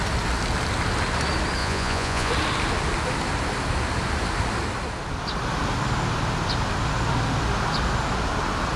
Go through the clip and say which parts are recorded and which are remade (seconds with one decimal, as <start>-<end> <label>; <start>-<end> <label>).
0.0-1.6 recorded; 1.6-2.3 remade; 2.3-8.8 recorded